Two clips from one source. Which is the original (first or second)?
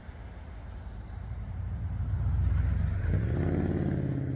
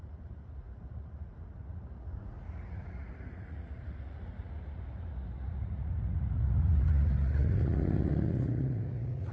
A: first